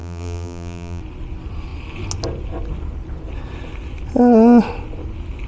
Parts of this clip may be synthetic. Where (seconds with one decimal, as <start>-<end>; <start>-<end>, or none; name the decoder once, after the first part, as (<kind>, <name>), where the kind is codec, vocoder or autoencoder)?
0.0-1.0 (vocoder, BigVGAN v2)